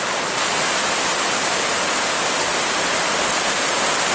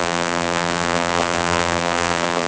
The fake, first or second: second